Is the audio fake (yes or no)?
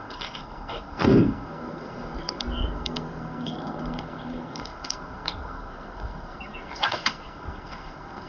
yes